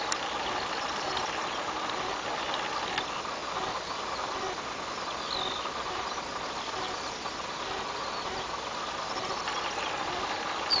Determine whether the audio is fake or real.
real